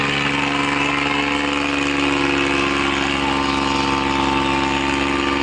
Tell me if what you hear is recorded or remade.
recorded